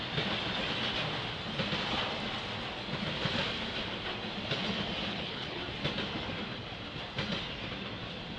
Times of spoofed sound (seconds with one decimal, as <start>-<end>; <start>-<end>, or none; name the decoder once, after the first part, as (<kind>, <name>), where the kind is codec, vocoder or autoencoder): 5.1-5.6 (codec, HILCodec)